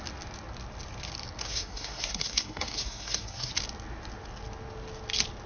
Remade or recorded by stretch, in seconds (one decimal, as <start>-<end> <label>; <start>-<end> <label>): 0.0-1.4 recorded; 1.4-3.5 remade; 3.5-5.5 recorded

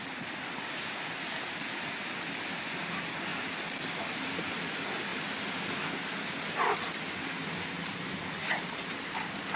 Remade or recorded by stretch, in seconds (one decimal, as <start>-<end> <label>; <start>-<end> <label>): 0.0-9.6 recorded

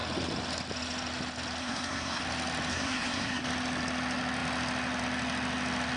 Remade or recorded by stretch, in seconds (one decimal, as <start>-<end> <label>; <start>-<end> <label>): 0.0-1.6 recorded; 1.6-2.2 remade; 2.2-2.7 recorded; 2.7-3.4 remade; 3.4-6.0 recorded

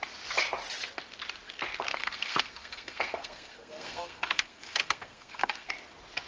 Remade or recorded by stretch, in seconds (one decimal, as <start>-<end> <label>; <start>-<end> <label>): 0.0-1.9 recorded; 1.9-5.7 remade; 5.7-6.3 recorded

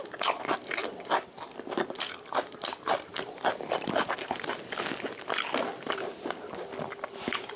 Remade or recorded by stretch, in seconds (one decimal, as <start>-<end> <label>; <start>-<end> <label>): 0.0-7.6 recorded

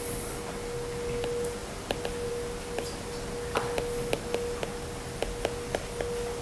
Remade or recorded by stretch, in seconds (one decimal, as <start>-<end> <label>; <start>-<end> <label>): 0.0-6.4 recorded